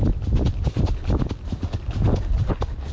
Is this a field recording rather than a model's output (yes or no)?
yes